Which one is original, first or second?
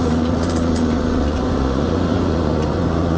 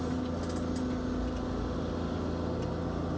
second